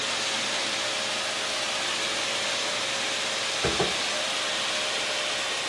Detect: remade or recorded recorded